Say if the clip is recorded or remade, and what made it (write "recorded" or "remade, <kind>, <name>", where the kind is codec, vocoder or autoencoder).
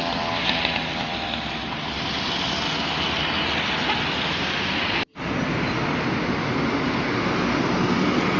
recorded